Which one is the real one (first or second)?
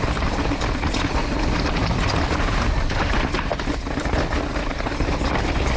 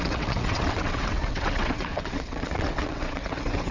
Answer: first